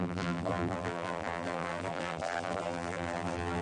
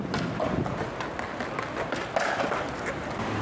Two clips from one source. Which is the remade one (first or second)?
first